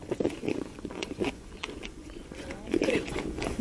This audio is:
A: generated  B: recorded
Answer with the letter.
A